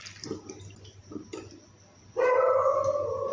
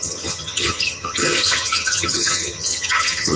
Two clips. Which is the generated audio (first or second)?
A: second